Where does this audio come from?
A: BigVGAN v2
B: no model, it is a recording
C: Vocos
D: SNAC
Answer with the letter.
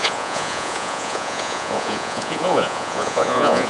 C